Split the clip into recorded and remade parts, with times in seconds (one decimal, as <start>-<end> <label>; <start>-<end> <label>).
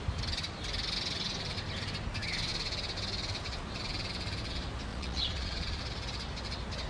0.0-4.9 recorded; 4.9-5.8 remade; 5.8-6.9 recorded